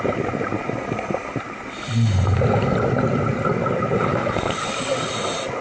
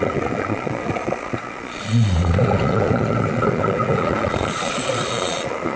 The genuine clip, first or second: first